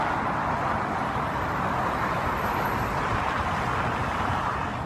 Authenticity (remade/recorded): recorded